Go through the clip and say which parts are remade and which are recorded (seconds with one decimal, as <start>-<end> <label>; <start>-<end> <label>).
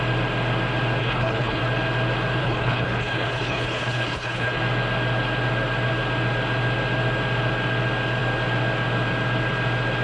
0.0-1.0 recorded; 1.0-1.6 remade; 1.6-2.4 recorded; 2.4-4.6 remade; 4.6-10.0 recorded